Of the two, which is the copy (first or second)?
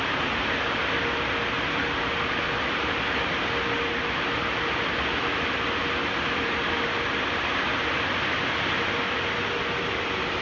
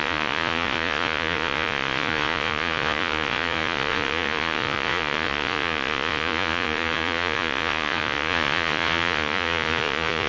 second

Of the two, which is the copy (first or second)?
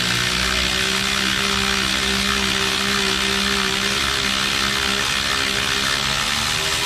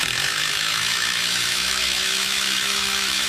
second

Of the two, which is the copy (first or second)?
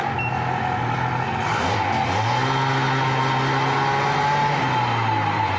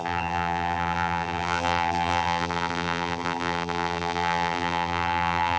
second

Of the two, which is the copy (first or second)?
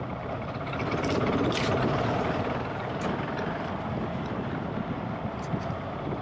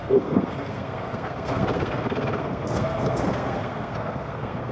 second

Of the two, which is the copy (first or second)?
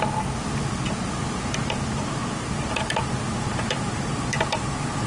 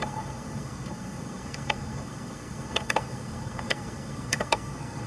second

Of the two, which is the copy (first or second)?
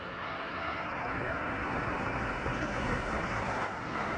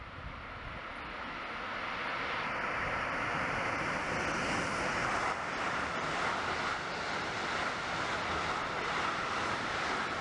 first